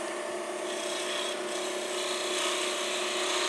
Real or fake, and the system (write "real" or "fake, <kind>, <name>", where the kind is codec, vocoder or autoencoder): real